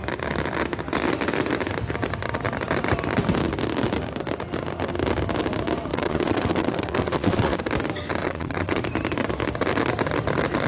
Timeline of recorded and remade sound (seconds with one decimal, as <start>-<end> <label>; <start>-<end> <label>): 0.0-5.9 recorded; 5.9-7.6 remade; 7.6-8.2 recorded; 8.2-8.8 remade; 8.8-10.7 recorded